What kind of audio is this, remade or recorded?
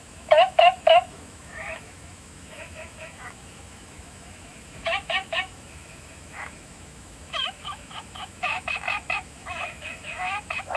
remade